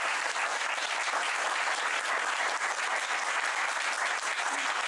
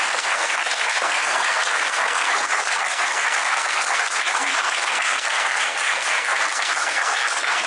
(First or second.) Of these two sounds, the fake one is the second